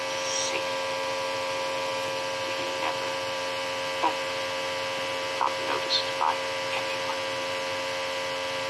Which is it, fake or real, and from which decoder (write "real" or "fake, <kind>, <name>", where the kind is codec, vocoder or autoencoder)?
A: fake, vocoder, BigVGAN v2